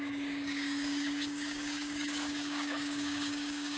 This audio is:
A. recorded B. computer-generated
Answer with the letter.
B